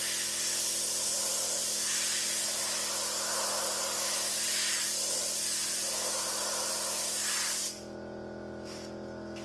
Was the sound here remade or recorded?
recorded